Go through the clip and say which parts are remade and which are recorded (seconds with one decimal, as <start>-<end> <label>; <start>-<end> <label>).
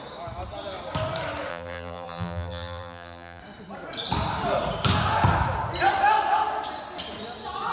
0.0-1.5 recorded; 1.5-3.4 remade; 3.4-7.7 recorded